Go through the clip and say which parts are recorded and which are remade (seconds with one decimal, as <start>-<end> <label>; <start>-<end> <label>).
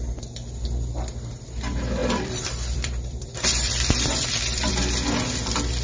0.0-2.0 recorded; 2.0-4.7 remade; 4.7-5.8 recorded